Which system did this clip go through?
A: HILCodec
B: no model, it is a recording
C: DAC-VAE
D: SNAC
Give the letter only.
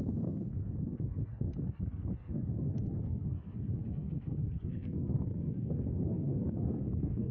D